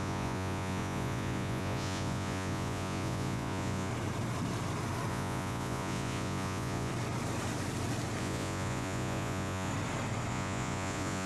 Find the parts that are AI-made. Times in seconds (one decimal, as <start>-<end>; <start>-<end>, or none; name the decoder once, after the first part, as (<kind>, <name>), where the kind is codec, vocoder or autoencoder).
0.0-3.9 (vocoder, Vocos); 5.1-6.9; 8.2-9.7; 10.3-11.3